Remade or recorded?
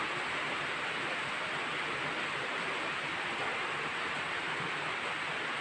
recorded